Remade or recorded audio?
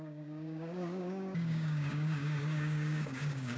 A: remade